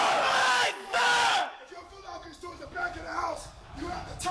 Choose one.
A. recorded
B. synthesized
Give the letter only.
B